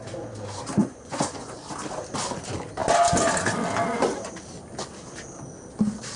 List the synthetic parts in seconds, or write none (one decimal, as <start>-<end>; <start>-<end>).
0.8-1.7